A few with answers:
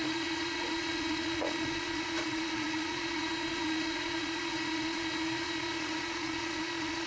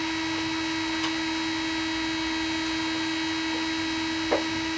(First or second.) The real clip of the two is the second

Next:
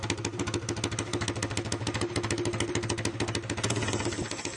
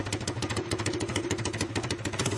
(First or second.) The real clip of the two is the first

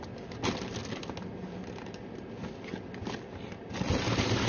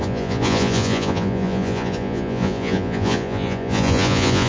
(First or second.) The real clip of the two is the first